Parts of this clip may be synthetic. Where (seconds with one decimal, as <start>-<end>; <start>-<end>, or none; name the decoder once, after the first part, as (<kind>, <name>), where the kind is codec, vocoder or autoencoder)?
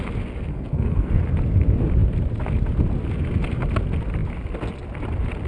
0.5-1.2 (codec, SNAC)